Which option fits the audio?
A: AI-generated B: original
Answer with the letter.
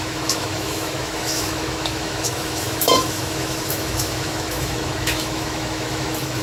A